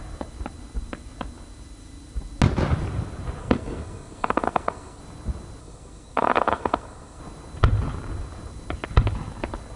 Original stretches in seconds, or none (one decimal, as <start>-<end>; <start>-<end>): 0.0-3.4; 5.0-5.6; 7.2-9.8

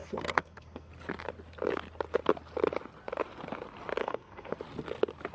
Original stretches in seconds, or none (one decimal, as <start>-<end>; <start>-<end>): 0.9-4.0; 4.6-5.3